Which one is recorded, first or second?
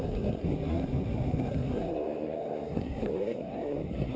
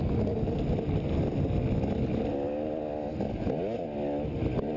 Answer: second